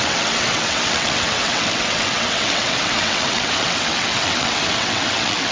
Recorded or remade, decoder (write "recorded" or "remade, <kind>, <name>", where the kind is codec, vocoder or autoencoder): remade, vocoder, WaveNeXt